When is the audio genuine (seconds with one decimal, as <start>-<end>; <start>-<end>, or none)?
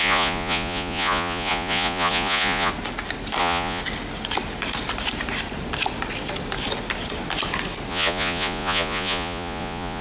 2.7-3.4; 3.8-7.9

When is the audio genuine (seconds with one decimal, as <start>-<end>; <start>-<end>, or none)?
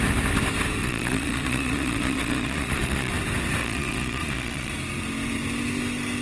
0.0-0.8; 3.1-3.6; 4.7-6.2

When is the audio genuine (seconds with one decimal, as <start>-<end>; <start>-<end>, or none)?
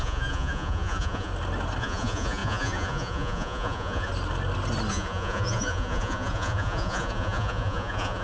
1.3-1.8; 4.1-4.9